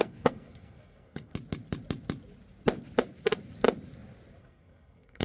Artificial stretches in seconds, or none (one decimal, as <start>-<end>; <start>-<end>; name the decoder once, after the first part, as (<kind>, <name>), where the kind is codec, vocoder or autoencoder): 0.0-1.3 (codec, SNAC); 4.4-5.2